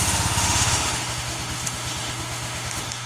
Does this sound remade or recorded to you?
remade